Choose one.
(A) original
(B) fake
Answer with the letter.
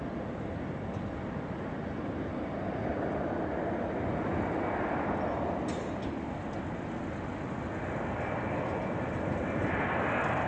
A